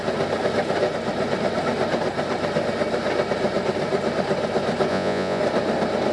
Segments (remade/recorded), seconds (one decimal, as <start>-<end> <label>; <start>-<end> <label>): 0.0-4.9 recorded; 4.9-5.4 remade; 5.4-6.1 recorded